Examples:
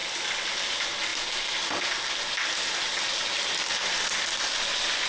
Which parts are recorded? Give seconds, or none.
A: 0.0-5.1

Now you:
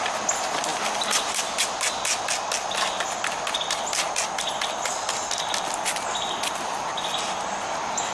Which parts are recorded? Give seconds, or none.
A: 0.0-8.1

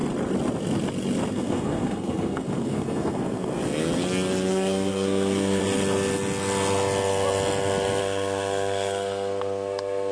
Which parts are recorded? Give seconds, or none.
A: 0.0-1.3; 3.6-4.5; 5.6-8.0

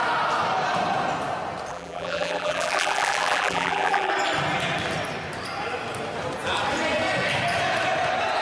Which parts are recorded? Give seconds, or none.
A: 0.0-1.7; 4.1-8.4